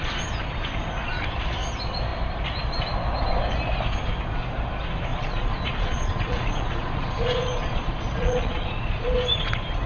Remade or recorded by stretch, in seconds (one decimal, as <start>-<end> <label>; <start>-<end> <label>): 0.0-5.1 recorded; 5.1-9.5 remade; 9.5-9.9 recorded